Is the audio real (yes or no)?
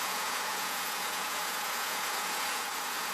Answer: no